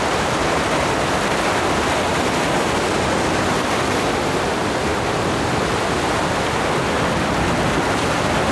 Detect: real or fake real